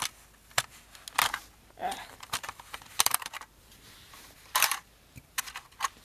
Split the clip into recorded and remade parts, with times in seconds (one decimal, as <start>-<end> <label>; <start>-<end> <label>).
0.0-1.8 recorded; 1.8-5.4 remade; 5.4-6.0 recorded